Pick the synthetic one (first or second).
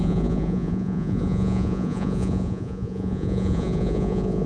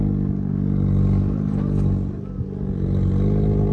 first